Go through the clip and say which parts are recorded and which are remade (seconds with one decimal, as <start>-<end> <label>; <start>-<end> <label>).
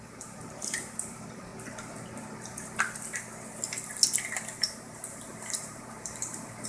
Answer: 0.0-1.5 remade; 1.5-4.6 recorded; 4.6-6.7 remade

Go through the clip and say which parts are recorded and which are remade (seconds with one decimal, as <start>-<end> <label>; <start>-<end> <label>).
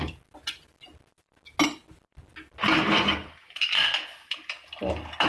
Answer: 0.0-5.3 recorded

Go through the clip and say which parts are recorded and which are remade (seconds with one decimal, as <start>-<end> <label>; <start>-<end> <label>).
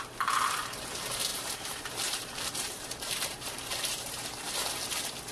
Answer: 0.0-1.3 recorded; 1.3-4.5 remade; 4.5-5.3 recorded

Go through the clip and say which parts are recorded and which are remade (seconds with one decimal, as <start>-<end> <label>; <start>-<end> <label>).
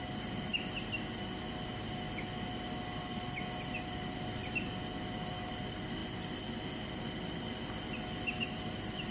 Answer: 0.0-6.0 remade; 6.0-7.0 recorded; 7.0-9.1 remade